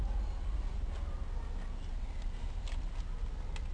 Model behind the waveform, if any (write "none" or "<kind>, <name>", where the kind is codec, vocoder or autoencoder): none